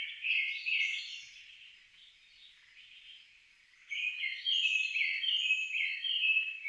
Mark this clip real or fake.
fake